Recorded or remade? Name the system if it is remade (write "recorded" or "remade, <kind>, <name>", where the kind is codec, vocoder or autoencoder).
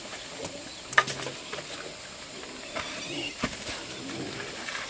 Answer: recorded